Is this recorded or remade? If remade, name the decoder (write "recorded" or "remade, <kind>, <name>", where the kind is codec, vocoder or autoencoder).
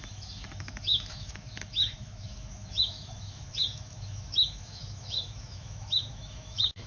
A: remade, autoencoder, DAC-VAE